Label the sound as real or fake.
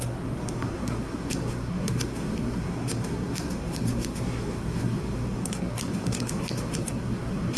fake